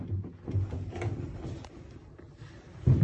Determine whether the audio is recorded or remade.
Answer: recorded